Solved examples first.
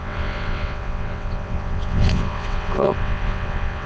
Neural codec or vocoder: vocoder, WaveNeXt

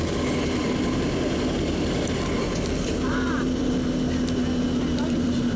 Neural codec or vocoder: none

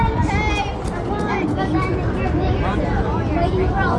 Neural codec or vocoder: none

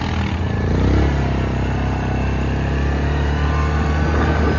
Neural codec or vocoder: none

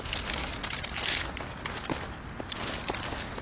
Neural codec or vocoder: none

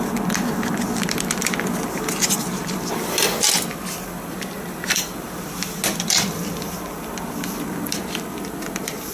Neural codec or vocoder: none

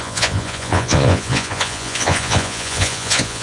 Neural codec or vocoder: vocoder, Vocos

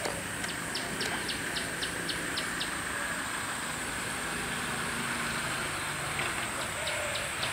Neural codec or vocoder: none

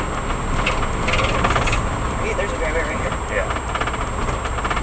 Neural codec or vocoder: none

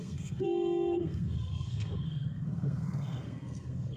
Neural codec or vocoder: codec, SNAC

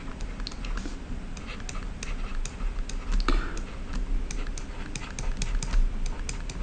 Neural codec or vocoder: none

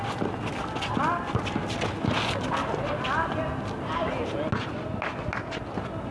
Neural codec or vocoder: none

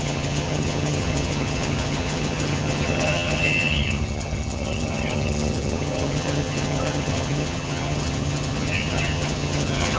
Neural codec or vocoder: vocoder, HiFi-GAN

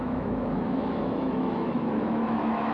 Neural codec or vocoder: autoencoder, DAC-VAE